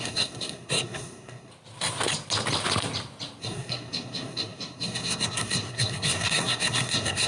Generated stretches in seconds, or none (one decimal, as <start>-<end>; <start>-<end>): 0.0-1.5; 3.4-7.3